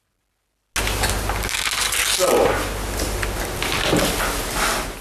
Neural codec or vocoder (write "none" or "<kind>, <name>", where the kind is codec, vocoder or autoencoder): none